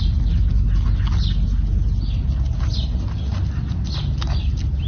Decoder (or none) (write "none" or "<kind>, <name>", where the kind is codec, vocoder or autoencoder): none